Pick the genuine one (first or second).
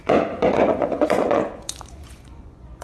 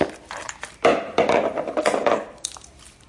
second